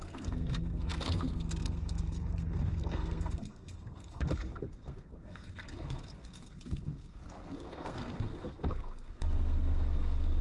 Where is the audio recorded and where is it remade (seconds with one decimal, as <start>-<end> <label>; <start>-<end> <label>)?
0.0-10.4 remade